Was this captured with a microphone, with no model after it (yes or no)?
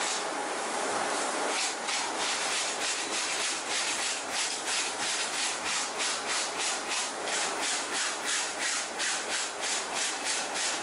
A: no